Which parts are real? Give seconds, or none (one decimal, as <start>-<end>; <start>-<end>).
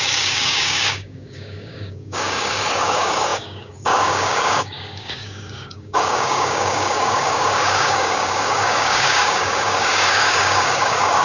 none